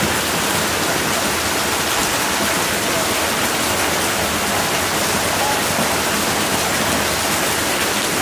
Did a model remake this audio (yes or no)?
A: no